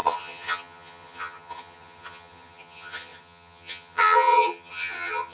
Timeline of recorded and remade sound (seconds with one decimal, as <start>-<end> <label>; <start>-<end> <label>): 0.0-5.3 remade